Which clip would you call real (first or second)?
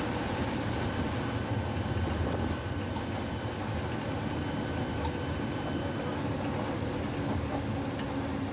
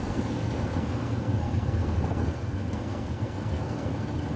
first